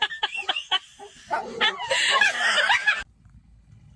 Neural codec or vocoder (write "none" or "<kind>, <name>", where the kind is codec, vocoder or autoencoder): none